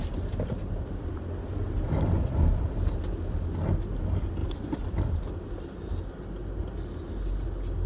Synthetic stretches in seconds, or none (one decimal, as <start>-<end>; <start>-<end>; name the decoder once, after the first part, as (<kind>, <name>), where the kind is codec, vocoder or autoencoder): none